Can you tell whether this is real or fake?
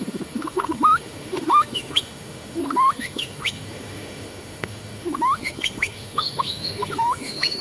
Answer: fake